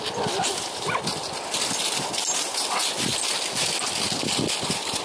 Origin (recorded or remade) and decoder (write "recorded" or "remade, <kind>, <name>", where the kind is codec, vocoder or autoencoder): recorded